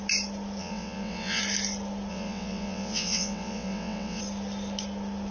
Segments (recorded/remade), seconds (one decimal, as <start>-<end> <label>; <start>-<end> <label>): 0.0-0.6 recorded; 0.6-1.4 remade; 1.4-2.1 recorded; 2.1-4.2 remade; 4.2-5.3 recorded